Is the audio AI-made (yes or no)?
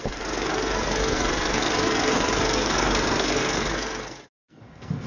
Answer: yes